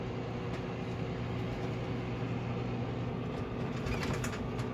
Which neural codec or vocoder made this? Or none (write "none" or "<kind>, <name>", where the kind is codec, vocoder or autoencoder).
none